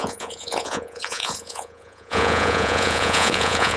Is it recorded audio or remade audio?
remade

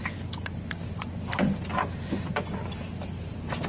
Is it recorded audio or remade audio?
recorded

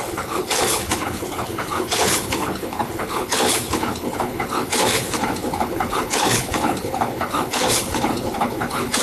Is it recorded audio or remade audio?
remade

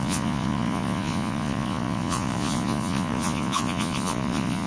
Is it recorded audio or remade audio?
remade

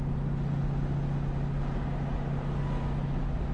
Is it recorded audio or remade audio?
recorded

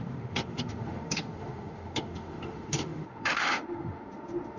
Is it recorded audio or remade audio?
remade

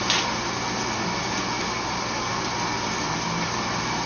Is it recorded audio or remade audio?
recorded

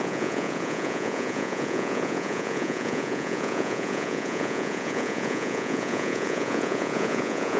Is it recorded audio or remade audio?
remade